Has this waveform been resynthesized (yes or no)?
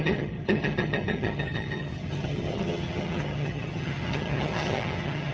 yes